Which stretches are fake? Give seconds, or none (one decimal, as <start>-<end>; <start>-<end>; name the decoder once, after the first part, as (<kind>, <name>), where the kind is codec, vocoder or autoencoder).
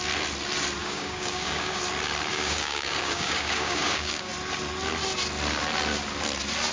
0.8-1.8 (codec, DAC); 2.3-4.3